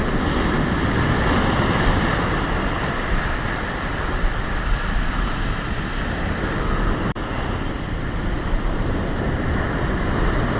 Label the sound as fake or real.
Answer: real